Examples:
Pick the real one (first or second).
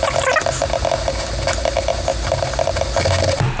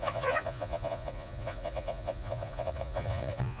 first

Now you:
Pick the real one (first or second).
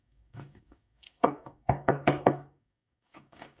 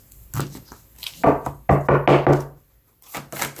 second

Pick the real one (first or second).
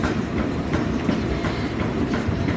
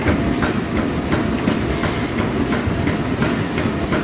second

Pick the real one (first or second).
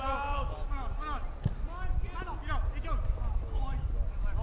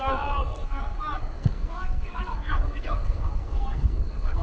first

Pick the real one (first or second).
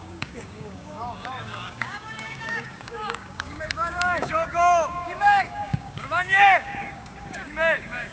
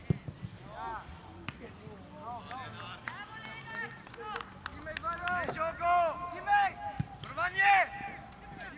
second